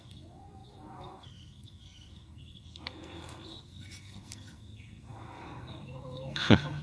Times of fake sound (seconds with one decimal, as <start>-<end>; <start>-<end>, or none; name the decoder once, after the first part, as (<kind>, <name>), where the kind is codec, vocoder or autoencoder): 0.0-6.8 (codec, SNAC)

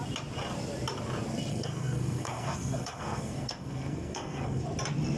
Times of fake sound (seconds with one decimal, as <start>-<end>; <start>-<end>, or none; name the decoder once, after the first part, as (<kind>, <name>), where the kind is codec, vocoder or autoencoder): 1.5-4.6 (codec, SNAC)

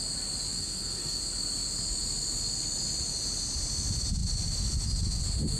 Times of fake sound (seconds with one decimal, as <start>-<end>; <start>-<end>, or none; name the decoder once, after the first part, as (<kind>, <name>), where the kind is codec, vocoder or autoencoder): 0.5-1.2 (codec, SNAC)